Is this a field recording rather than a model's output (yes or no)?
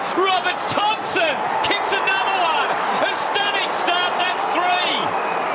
no